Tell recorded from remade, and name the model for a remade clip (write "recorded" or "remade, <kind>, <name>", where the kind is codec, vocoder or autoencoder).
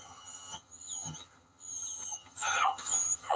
remade, vocoder, HiFi-GAN